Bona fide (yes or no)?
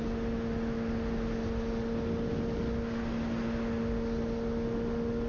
yes